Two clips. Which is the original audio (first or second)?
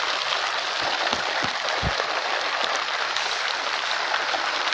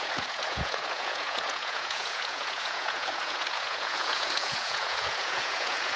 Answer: first